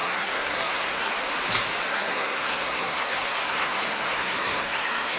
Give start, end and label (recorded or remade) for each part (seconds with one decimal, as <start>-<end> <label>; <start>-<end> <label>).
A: 0.0-1.1 remade; 1.1-1.9 recorded; 1.9-5.2 remade